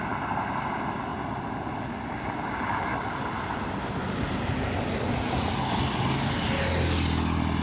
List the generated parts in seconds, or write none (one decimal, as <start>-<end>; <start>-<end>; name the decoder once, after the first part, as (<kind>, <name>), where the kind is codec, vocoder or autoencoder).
none